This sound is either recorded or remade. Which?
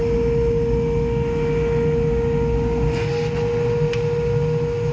recorded